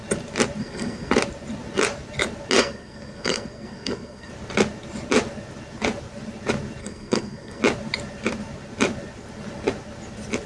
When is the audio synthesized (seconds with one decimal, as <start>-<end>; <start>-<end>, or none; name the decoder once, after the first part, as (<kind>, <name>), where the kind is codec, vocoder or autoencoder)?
0.6-1.1 (codec, SNAC); 2.6-4.3; 6.8-7.6